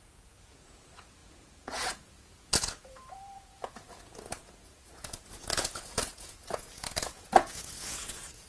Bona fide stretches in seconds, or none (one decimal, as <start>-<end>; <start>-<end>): none